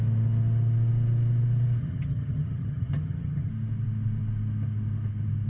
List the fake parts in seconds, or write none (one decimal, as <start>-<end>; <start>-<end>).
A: 1.8-3.5